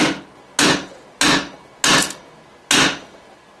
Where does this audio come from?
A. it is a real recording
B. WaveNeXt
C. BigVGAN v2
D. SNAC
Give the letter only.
A